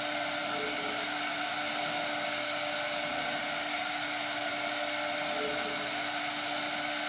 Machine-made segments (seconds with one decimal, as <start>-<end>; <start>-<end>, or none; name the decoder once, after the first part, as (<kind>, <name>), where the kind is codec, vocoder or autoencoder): none